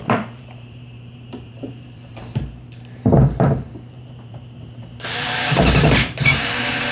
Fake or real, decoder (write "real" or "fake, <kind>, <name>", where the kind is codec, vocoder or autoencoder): fake, vocoder, BigVGAN v2